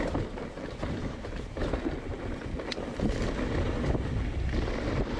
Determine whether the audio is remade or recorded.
recorded